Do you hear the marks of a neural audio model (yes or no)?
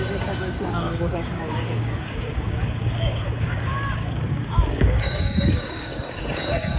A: yes